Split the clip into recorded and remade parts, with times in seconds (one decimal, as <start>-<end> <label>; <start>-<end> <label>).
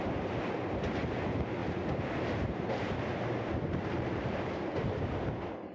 0.0-1.6 recorded; 1.6-5.0 remade; 5.0-5.7 recorded